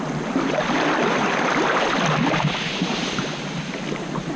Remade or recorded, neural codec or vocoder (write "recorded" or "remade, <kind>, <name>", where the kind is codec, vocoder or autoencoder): recorded